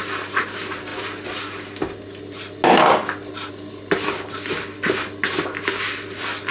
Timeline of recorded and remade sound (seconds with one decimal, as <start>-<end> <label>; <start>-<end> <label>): 0.0-6.5 recorded